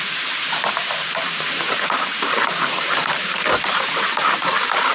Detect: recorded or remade remade